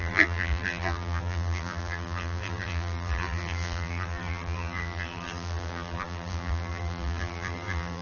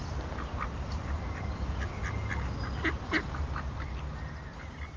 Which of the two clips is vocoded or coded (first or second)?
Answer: first